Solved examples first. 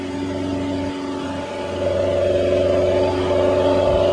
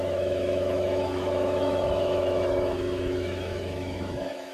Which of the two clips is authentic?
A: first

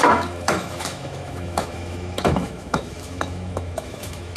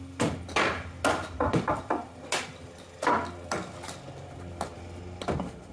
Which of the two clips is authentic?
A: second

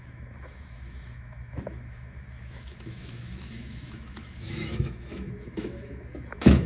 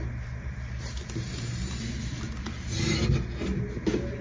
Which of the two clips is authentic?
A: second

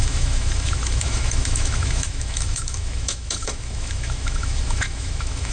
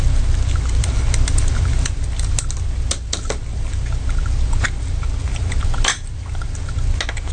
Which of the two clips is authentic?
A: second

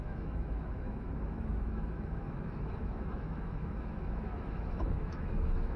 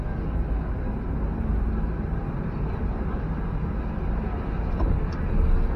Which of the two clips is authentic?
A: second